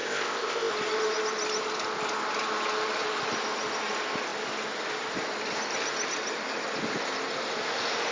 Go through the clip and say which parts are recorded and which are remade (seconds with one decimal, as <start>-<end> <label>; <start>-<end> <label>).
0.0-0.7 remade; 0.7-8.1 recorded